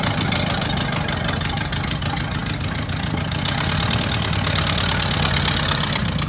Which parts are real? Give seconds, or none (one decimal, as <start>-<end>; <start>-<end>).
0.0-6.3